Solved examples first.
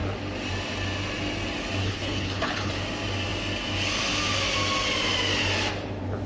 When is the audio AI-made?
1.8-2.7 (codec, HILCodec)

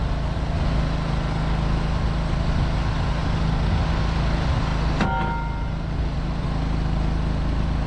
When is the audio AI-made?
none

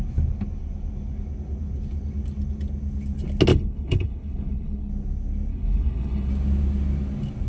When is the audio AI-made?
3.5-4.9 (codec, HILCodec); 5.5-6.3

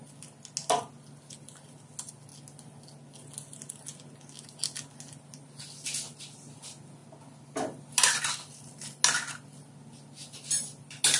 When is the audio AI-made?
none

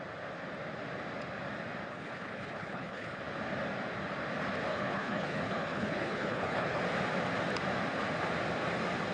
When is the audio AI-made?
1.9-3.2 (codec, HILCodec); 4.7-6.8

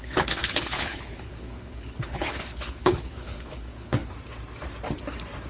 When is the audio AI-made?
0.0-4.0 (codec, HILCodec)